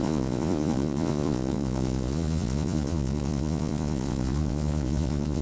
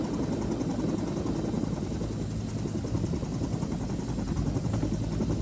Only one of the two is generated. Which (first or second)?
first